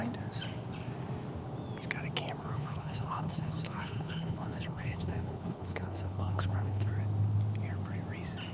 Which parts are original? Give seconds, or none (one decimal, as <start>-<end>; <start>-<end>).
0.0-2.4; 6.9-8.5